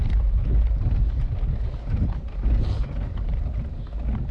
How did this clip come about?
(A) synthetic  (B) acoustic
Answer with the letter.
B